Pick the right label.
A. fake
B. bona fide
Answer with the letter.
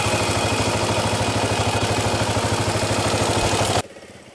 B